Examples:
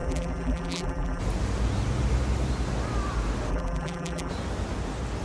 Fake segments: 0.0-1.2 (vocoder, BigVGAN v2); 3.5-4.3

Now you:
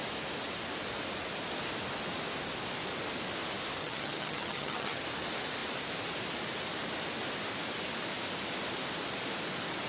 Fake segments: 3.8-5.0 (vocoder, HiFi-GAN)

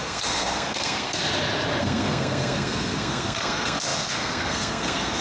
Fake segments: 0.0-1.2 (codec, SNAC); 1.8-5.2

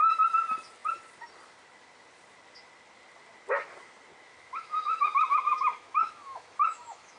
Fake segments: 4.3-7.2 (autoencoder, DAC-VAE)